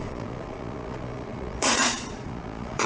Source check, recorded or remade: remade